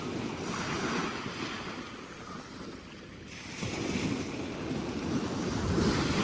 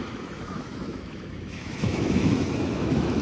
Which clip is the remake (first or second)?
second